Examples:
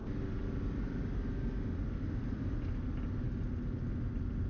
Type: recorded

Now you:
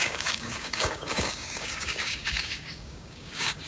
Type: remade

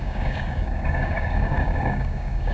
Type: remade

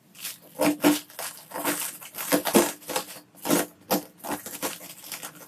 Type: recorded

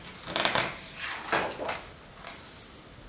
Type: recorded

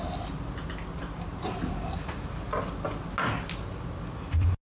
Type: recorded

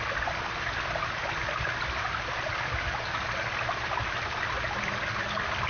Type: recorded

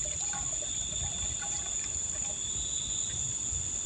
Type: recorded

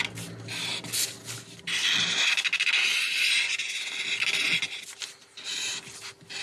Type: recorded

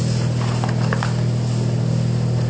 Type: recorded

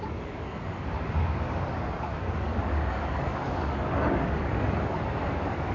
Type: remade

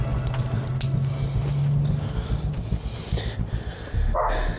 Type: recorded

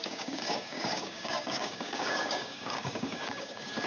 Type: remade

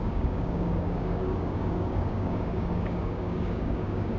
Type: remade